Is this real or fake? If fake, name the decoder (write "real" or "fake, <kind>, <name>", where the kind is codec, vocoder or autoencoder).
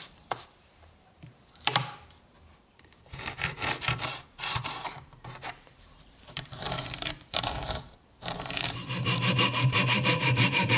fake, vocoder, BigVGAN v2